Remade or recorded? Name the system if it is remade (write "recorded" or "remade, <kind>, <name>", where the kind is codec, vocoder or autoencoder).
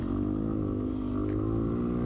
recorded